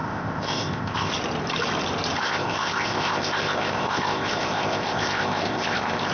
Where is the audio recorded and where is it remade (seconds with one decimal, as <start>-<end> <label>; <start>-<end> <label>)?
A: 0.0-1.1 remade; 1.1-2.2 recorded; 2.2-6.1 remade